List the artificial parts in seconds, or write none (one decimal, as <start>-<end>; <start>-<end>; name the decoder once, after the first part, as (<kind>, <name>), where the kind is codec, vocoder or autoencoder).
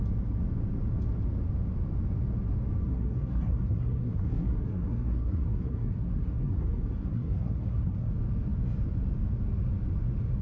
2.9-8.1 (codec, SNAC)